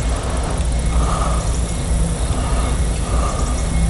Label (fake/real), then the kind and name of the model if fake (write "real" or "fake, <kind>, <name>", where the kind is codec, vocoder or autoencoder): real